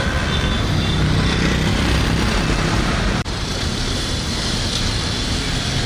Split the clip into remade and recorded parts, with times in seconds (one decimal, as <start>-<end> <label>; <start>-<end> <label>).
0.0-1.7 recorded; 1.7-4.9 remade; 4.9-5.9 recorded